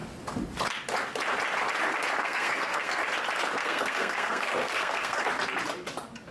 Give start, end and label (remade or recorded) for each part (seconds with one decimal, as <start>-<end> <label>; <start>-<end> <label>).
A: 0.0-2.2 recorded; 2.2-3.0 remade; 3.0-3.6 recorded; 3.6-5.3 remade; 5.3-6.3 recorded